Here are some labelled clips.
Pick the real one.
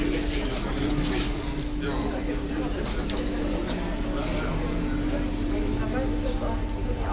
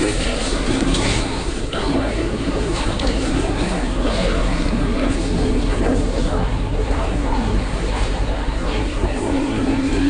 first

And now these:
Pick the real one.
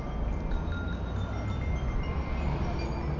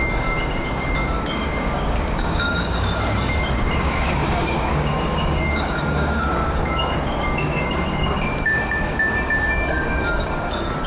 first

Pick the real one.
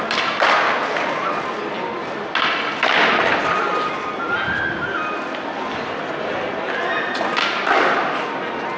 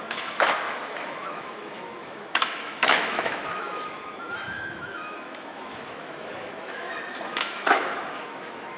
first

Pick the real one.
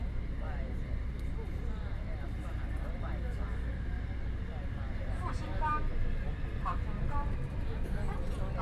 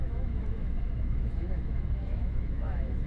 first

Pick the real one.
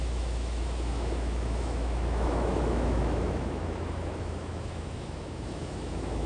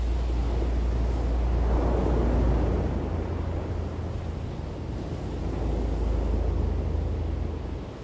second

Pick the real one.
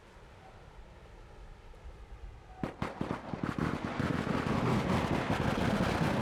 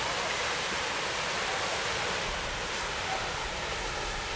first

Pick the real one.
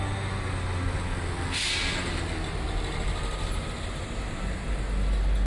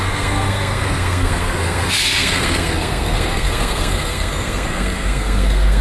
first